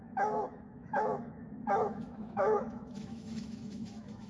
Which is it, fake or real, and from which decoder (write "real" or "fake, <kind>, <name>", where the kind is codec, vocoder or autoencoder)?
fake, autoencoder, DAC-VAE